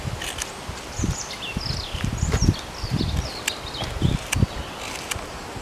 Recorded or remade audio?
recorded